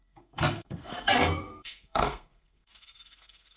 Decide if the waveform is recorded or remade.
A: remade